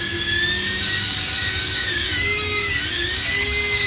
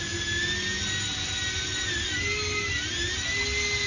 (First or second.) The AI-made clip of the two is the first